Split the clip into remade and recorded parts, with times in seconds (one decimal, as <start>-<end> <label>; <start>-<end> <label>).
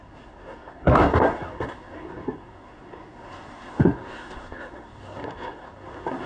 0.0-6.3 remade